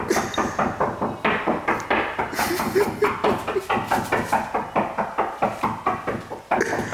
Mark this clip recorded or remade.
recorded